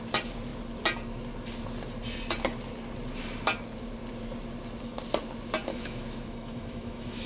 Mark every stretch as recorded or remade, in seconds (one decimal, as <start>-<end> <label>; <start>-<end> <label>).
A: 0.0-5.7 recorded; 5.7-7.3 remade

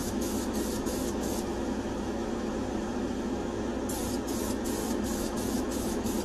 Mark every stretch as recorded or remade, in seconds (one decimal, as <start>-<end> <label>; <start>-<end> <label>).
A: 0.0-3.7 remade; 3.7-4.8 recorded; 4.8-6.2 remade